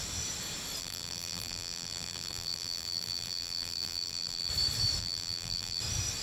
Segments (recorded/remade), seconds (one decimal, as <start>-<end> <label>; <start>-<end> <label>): 0.0-0.8 recorded; 0.8-4.5 remade; 4.5-5.0 recorded; 5.0-5.8 remade; 5.8-6.2 recorded